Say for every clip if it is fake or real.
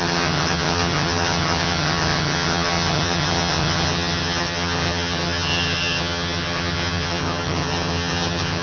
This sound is fake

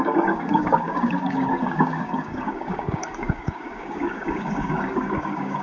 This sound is fake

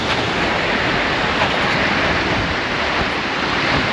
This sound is real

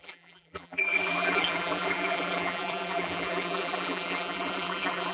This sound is fake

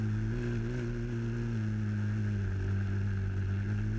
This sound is real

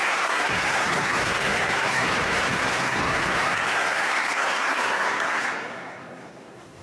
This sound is fake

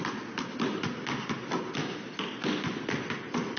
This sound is real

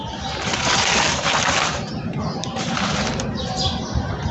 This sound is fake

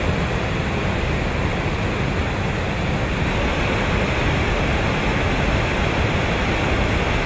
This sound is real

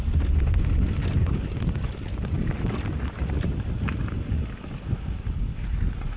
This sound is real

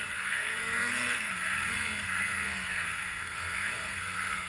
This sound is fake